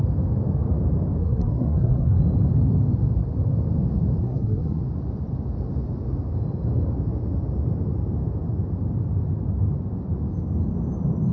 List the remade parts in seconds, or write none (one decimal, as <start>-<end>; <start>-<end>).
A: 1.2-2.2; 4.2-4.8